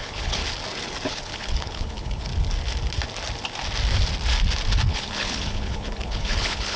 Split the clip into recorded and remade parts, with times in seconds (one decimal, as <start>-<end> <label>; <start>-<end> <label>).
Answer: 0.0-0.4 remade; 0.4-1.1 recorded; 1.1-2.3 remade; 2.3-4.9 recorded; 4.9-6.8 remade